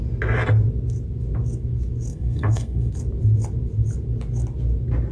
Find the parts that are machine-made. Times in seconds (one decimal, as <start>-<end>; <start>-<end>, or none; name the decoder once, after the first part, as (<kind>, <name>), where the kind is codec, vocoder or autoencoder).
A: 2.1-2.9 (codec, SNAC)